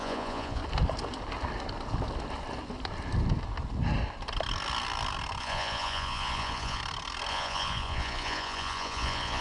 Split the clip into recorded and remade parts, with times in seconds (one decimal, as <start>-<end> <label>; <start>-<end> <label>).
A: 0.0-0.6 remade; 0.6-5.4 recorded; 5.4-6.8 remade; 6.8-7.3 recorded; 7.3-9.4 remade